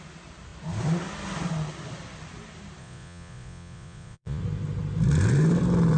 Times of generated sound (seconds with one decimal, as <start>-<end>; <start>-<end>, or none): 2.8-4.4